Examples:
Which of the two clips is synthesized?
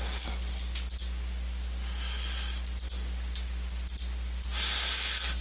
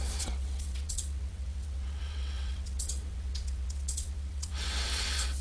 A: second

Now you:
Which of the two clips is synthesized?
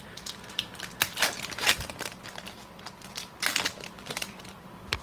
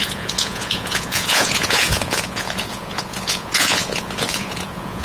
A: second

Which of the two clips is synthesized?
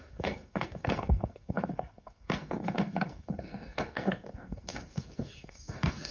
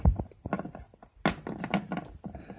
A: first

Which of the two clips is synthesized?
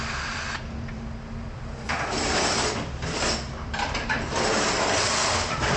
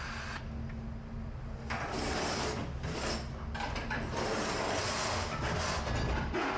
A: first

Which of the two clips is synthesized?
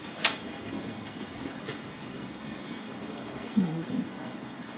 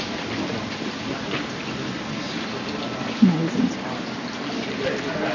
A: first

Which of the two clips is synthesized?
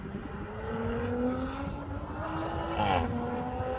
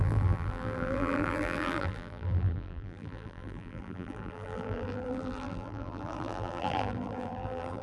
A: second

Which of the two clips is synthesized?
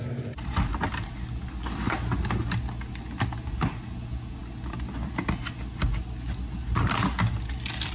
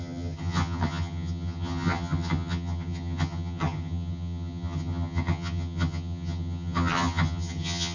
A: second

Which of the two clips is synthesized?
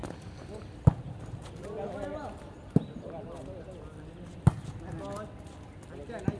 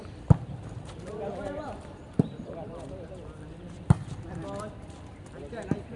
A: second